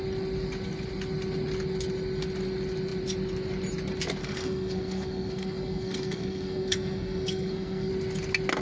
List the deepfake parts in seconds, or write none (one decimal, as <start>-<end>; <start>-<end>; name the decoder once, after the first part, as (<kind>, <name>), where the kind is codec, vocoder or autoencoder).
4.2-7.9 (codec, SNAC)